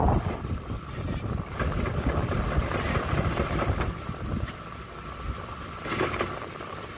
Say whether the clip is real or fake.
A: real